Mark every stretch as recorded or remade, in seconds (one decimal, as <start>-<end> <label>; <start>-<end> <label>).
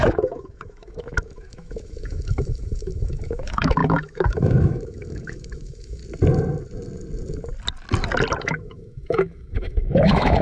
0.0-6.0 remade; 6.0-8.4 recorded; 8.4-10.4 remade